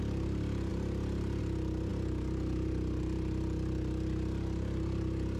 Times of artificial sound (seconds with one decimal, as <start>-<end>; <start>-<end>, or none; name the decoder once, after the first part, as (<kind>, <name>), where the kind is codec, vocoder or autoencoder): none